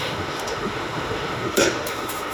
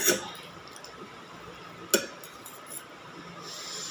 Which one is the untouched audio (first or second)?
second